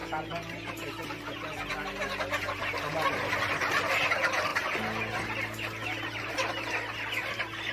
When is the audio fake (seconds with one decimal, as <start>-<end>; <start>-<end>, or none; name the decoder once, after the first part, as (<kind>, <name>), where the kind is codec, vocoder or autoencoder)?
none